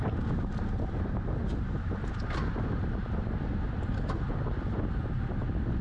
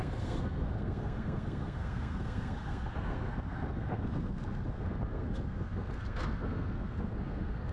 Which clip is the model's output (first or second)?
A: second